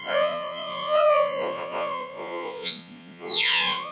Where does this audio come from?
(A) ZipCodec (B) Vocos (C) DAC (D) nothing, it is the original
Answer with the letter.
B